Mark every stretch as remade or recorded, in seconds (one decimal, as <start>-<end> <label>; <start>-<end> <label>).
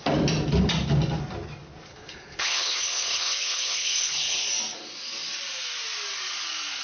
0.0-1.9 recorded; 1.9-4.5 remade; 4.5-6.8 recorded